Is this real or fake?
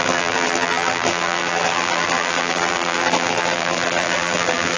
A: fake